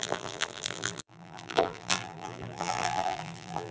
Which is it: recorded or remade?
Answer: remade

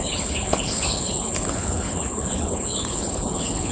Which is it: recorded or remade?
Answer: remade